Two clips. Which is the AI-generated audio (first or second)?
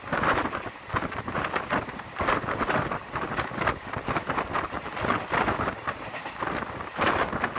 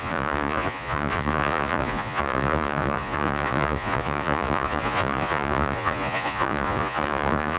second